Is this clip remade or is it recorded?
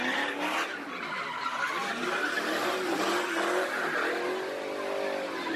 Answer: recorded